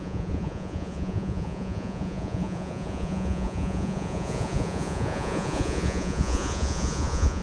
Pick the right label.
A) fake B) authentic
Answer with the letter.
A